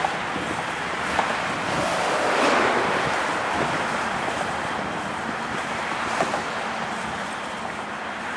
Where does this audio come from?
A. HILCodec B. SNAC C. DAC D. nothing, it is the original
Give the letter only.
D